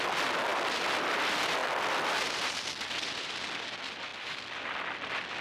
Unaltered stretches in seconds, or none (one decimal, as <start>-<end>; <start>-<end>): 0.0-1.6; 2.6-5.4